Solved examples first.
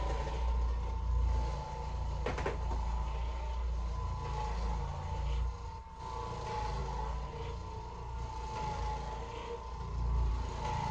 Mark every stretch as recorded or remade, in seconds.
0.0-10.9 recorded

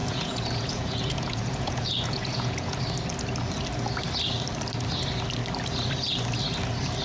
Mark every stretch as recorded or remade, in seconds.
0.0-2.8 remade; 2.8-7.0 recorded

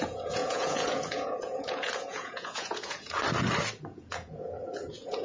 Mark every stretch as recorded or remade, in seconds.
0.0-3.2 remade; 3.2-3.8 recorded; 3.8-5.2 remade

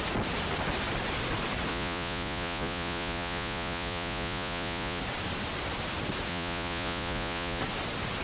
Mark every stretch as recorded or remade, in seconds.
0.0-1.7 recorded; 1.7-5.0 remade; 5.0-6.3 recorded; 6.3-7.6 remade; 7.6-8.2 recorded

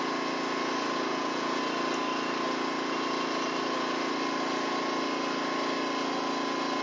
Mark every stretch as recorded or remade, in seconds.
0.0-1.1 recorded; 1.1-1.6 remade; 1.6-6.8 recorded